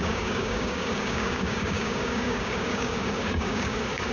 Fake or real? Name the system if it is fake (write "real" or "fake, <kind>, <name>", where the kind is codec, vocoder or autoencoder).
fake, codec, DAC